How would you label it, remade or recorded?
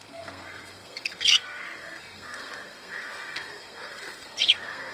remade